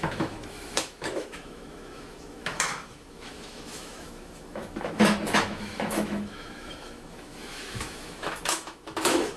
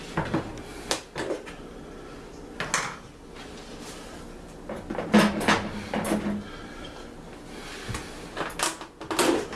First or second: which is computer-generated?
first